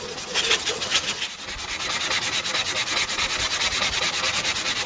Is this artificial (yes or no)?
no